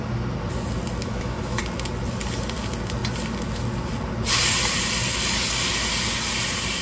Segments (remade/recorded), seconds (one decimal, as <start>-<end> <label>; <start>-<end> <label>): 0.0-1.0 recorded; 1.0-1.6 remade; 1.6-6.8 recorded